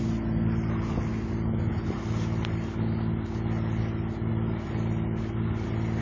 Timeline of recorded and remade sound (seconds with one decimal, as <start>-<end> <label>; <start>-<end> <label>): 0.0-6.0 recorded